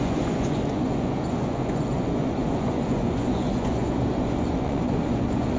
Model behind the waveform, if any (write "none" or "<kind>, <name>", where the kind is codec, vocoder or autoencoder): vocoder, Vocos